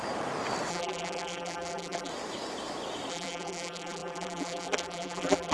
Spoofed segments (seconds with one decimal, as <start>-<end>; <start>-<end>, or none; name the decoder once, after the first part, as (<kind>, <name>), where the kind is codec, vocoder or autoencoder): 0.7-2.1 (vocoder, BigVGAN v2); 3.1-5.5